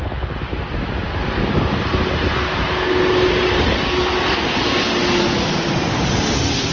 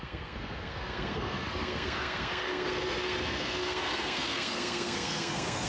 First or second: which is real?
first